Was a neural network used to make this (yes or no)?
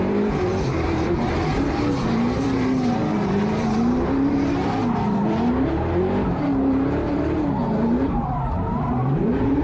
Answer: yes